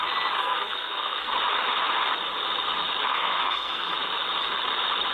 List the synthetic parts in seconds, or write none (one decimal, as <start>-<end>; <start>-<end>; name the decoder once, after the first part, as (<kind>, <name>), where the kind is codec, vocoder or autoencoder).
0.4-1.3 (codec, SNAC); 3.1-3.9